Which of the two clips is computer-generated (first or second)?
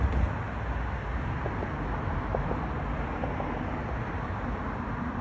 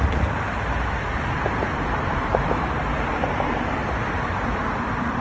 second